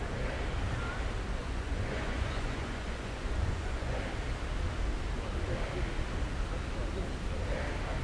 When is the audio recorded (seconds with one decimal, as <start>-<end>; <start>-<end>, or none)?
0.0-1.4; 4.0-8.0